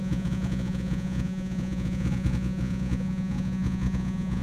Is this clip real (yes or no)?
no